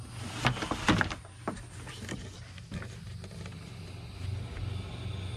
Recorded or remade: recorded